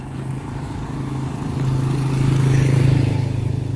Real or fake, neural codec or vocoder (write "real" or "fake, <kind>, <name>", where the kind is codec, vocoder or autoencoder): fake, codec, DAC